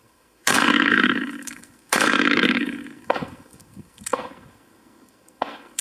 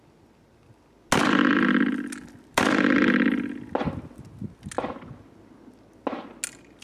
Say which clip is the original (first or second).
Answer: second